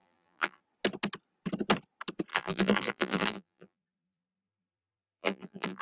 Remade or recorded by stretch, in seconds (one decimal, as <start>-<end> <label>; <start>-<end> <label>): 0.0-0.6 remade; 0.6-2.3 recorded; 2.3-5.8 remade